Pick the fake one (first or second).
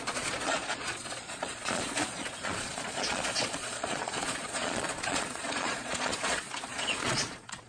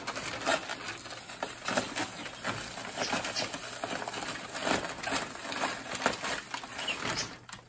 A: first